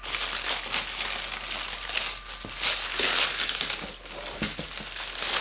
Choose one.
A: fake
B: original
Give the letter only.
B